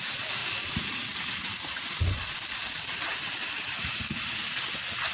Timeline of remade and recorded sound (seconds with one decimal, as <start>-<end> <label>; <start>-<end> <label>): 0.0-5.1 recorded